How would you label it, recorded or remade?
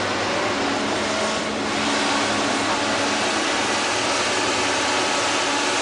recorded